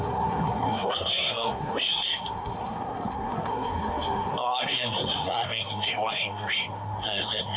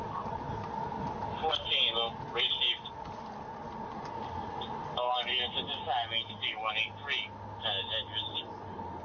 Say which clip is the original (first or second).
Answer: second